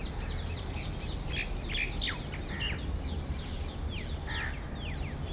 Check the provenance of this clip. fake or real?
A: real